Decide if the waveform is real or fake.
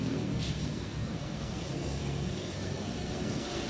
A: fake